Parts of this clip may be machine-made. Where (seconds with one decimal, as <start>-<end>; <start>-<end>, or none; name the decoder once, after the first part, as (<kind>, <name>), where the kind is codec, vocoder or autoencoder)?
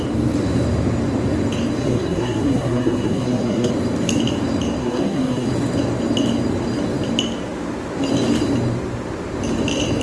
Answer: 1.8-3.7 (codec, SNAC); 4.8-5.5